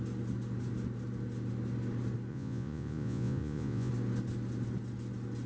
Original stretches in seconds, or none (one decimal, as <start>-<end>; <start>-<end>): 0.0-2.3; 3.9-5.5